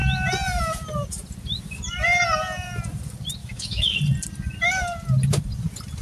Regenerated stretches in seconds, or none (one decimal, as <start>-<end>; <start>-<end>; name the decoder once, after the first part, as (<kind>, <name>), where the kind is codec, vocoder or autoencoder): 3.4-4.0 (autoencoder, DAC-VAE)